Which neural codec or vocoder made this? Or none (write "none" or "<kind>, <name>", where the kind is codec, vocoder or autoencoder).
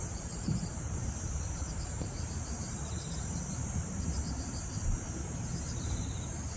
vocoder, BigVGAN v2